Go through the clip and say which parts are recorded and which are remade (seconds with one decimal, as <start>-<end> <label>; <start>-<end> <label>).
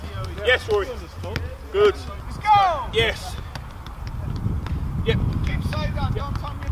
0.0-5.4 recorded; 5.4-6.1 remade; 6.1-6.7 recorded